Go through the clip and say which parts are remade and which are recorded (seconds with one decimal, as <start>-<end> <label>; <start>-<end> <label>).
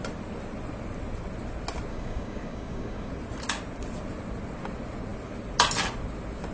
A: 0.0-1.9 recorded; 1.9-3.1 remade; 3.1-6.5 recorded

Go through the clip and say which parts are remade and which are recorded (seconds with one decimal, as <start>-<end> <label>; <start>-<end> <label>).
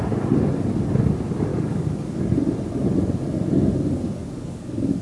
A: 0.0-1.5 recorded; 1.5-2.2 remade; 2.2-4.2 recorded; 4.2-5.0 remade